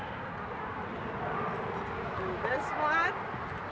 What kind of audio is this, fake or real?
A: real